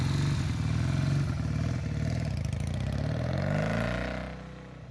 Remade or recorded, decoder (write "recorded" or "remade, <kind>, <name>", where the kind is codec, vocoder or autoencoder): recorded